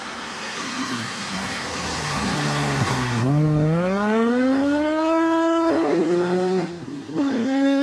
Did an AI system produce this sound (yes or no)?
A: yes